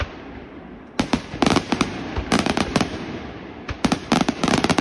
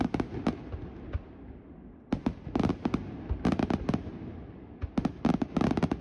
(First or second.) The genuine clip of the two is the second